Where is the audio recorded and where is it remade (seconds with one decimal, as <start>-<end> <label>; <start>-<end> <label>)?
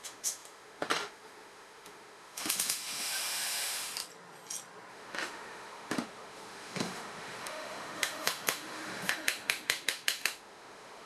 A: 0.0-3.9 remade; 3.9-4.9 recorded; 4.9-11.1 remade